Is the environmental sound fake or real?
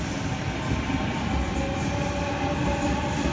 real